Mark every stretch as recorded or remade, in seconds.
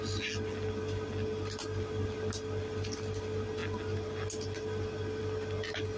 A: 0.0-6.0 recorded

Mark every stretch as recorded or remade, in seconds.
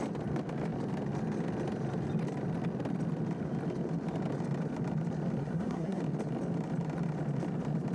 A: 0.0-5.4 recorded; 5.4-6.0 remade; 6.0-7.9 recorded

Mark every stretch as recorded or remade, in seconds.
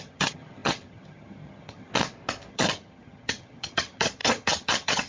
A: 0.0-1.9 remade; 1.9-2.5 recorded; 2.5-5.1 remade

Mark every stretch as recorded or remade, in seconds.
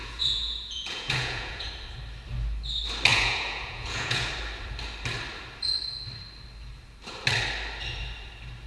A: 0.0-1.7 remade; 1.7-3.1 recorded; 3.1-4.3 remade; 4.3-8.7 recorded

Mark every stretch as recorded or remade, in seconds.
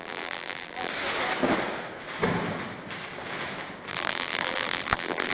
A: 0.0-0.9 remade; 0.9-3.9 recorded; 3.9-5.3 remade